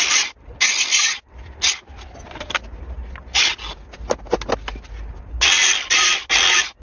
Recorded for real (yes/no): yes